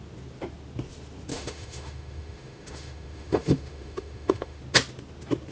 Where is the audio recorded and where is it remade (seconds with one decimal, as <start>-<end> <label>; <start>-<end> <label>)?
0.0-1.3 recorded; 1.3-4.6 remade; 4.6-5.5 recorded